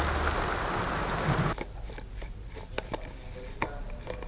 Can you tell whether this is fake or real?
real